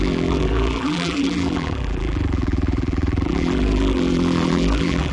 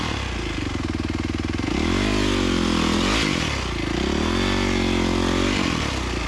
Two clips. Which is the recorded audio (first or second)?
second